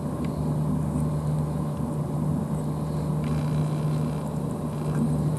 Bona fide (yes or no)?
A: yes